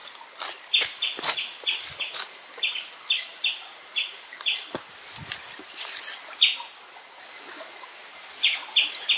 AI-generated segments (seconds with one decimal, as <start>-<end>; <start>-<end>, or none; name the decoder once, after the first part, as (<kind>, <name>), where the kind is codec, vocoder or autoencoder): 6.5-7.2 (vocoder, BigVGAN v2); 8.0-9.2